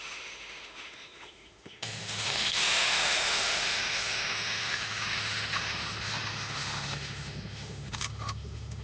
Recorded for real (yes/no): no